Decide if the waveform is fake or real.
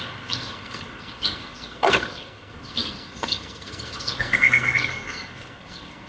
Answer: fake